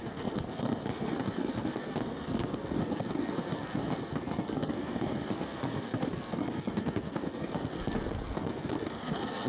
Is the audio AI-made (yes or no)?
yes